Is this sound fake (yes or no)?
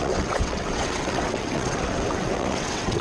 yes